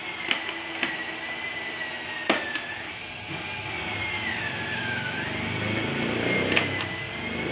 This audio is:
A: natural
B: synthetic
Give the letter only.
A